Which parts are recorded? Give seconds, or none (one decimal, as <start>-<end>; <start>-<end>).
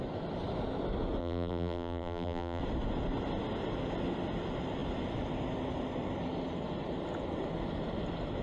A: 0.0-1.2; 2.6-8.4